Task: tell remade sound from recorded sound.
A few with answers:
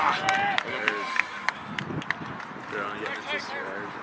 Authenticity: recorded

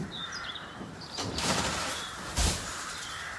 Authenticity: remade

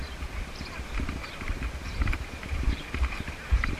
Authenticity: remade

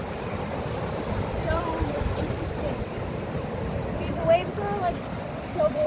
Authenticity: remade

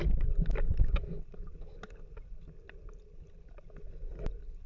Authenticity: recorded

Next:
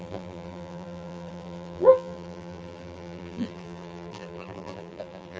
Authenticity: remade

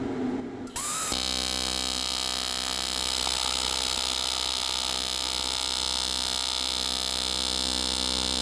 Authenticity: recorded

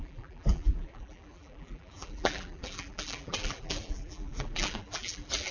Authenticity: remade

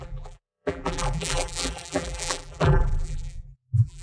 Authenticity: remade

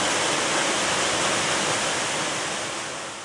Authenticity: recorded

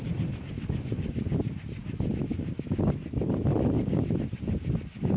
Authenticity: recorded